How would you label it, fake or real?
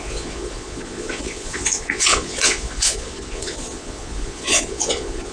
fake